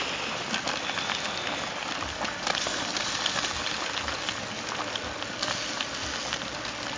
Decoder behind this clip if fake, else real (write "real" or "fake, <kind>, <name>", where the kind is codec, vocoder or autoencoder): real